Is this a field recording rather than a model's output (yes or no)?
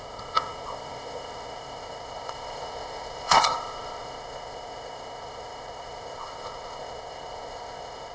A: no